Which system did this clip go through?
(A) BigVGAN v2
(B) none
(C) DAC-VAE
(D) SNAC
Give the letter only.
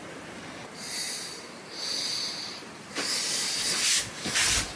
A